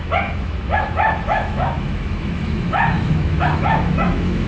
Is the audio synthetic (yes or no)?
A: yes